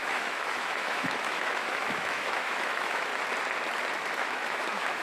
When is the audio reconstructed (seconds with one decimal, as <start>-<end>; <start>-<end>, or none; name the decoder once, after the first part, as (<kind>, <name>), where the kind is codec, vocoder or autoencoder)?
0.0-3.1 (autoencoder, DAC-VAE); 4.2-5.0